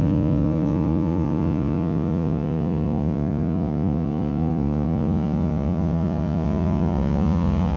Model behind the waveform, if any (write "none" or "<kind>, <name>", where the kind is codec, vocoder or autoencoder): vocoder, Vocos